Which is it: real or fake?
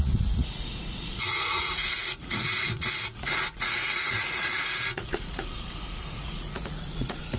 fake